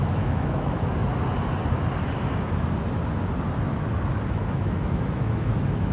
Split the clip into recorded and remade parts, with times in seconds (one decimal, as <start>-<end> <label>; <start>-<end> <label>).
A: 0.0-1.0 remade; 1.0-4.3 recorded; 4.3-5.9 remade